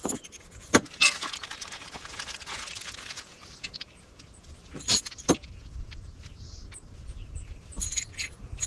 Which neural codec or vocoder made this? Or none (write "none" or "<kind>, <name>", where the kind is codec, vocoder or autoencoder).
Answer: vocoder, Vocos